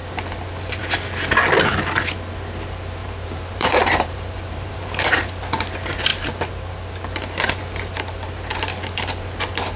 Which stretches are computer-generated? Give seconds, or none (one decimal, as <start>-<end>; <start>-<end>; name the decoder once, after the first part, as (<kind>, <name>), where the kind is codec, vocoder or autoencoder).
3.0-5.2 (vocoder, BigVGAN v2)